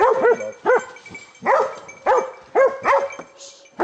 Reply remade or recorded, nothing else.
recorded